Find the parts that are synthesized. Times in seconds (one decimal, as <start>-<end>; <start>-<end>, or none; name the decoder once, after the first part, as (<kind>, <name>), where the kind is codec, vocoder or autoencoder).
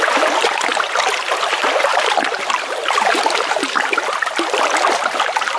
1.9-4.9 (vocoder, BigVGAN v2)